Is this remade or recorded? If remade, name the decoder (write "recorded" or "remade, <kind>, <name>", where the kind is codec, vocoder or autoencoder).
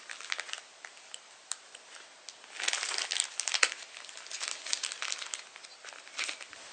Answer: recorded